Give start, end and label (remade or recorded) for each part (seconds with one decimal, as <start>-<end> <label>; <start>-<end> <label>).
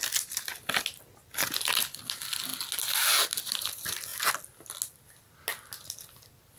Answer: 0.0-6.6 recorded